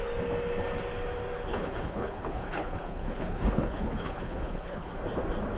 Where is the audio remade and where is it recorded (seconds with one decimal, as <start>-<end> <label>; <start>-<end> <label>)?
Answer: 0.0-1.5 recorded; 1.5-4.9 remade; 4.9-5.6 recorded